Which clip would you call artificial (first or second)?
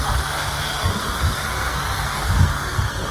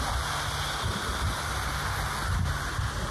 first